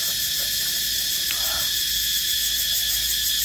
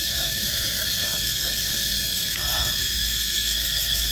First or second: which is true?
first